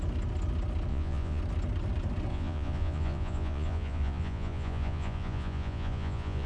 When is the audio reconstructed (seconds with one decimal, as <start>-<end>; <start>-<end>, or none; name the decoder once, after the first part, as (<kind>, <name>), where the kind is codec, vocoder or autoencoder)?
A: 0.9-1.4 (vocoder, Vocos); 2.3-6.5